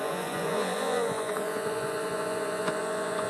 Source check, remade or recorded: remade